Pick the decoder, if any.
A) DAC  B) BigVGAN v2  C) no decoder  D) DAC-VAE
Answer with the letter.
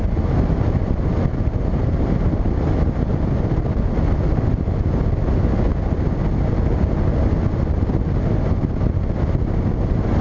C